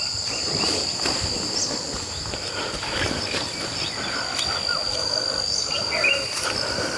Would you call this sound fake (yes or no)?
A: no